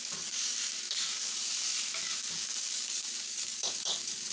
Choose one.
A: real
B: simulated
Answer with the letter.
B